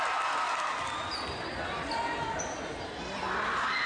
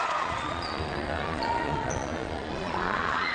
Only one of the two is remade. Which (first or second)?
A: second